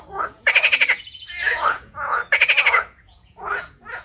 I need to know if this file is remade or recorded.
remade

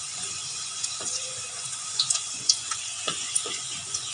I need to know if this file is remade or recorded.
remade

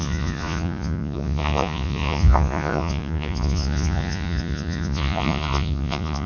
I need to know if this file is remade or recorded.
remade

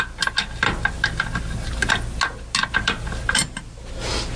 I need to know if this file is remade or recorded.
recorded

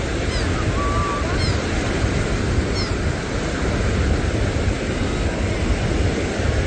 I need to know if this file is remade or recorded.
recorded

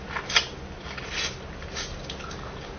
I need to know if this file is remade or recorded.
recorded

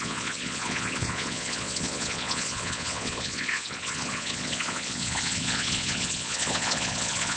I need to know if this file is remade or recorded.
remade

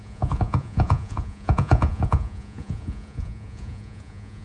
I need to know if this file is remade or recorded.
remade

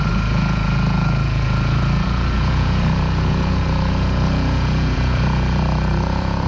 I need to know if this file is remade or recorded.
remade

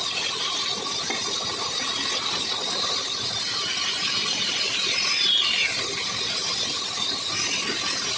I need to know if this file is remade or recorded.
recorded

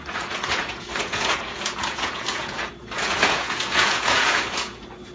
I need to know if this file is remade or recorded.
remade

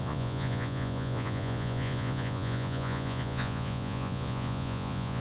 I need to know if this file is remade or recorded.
remade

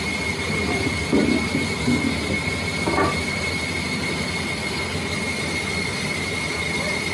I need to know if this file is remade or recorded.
recorded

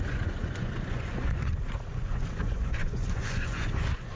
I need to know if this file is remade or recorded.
remade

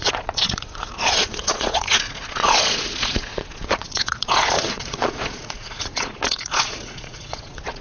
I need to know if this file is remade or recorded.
remade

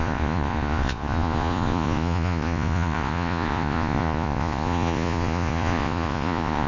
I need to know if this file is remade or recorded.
remade